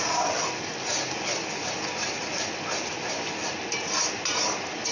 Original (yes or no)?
yes